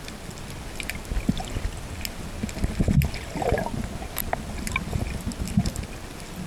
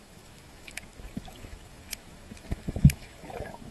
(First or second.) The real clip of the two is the first